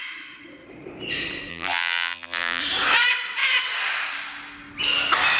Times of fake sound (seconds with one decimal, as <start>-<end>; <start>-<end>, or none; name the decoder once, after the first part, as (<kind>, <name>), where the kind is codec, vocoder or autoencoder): 1.5-2.6 (vocoder, BigVGAN v2)